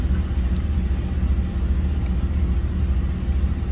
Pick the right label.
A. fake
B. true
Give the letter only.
B